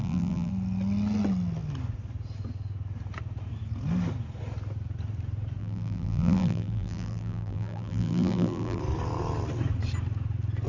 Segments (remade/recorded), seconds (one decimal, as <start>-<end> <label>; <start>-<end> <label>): 0.0-0.5 remade; 0.5-5.6 recorded; 5.6-8.8 remade; 8.8-10.7 recorded